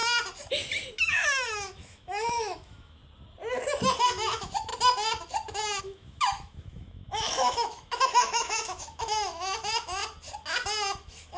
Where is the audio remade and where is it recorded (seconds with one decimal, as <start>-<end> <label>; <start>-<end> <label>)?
0.0-1.0 recorded; 1.0-3.0 remade; 3.0-4.0 recorded; 4.0-4.7 remade; 4.7-5.8 recorded; 5.8-10.0 remade; 10.0-10.9 recorded; 10.9-11.4 remade